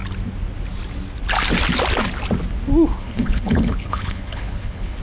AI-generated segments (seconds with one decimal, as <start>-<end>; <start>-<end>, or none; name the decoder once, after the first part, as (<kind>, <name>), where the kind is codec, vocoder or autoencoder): 3.0-5.0 (codec, HILCodec)